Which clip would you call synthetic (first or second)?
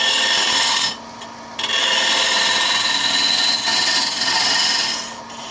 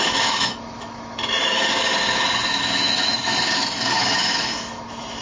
second